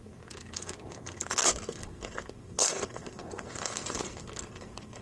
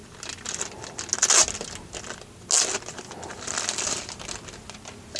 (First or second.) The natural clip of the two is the second